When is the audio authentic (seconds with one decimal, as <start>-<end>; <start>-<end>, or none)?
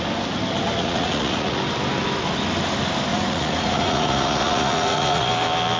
0.0-0.8; 1.6-3.1; 5.3-5.8